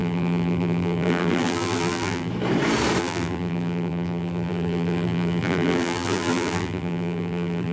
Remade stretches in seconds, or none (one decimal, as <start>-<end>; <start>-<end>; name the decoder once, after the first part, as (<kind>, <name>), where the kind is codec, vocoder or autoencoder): 0.0-2.3 (vocoder, BigVGAN v2); 3.0-7.7